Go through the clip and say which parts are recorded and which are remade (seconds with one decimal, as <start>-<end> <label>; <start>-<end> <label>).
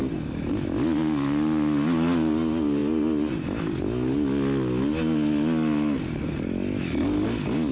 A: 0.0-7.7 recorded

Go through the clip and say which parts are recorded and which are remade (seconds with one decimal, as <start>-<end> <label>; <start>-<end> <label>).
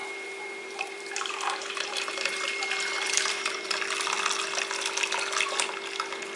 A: 0.0-3.8 remade; 3.8-6.4 recorded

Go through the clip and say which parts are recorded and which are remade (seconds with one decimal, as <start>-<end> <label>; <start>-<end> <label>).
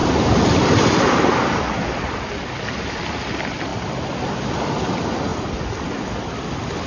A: 0.0-6.9 recorded